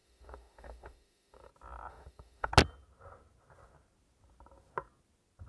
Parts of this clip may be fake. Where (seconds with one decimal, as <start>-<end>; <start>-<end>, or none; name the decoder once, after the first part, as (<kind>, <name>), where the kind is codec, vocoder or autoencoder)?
0.0-1.5 (autoencoder, DAC-VAE); 1.9-2.5

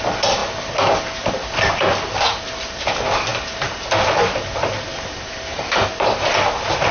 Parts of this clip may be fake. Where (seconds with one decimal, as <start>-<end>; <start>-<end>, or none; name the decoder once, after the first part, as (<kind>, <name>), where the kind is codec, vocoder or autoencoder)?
none

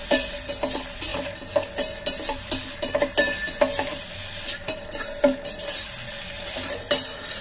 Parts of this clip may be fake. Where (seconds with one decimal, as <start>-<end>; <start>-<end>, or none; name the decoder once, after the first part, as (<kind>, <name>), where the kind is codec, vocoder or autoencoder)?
none